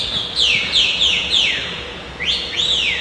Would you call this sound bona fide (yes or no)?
no